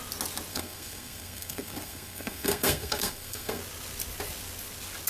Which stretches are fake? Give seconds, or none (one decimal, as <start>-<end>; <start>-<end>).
0.5-3.6